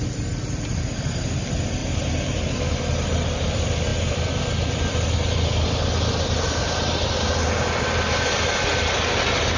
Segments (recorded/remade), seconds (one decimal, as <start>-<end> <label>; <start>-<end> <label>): 0.0-1.8 recorded; 1.8-2.4 remade; 2.4-9.6 recorded